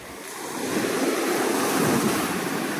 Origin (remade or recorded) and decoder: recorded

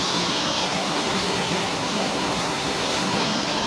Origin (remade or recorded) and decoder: remade, codec, SNAC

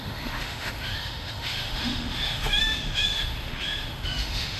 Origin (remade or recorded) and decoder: remade, autoencoder, DAC-VAE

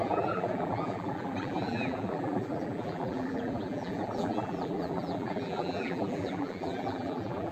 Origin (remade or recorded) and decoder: remade, vocoder, BigVGAN v2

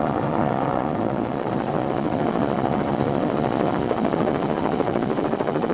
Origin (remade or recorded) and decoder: remade, vocoder, Vocos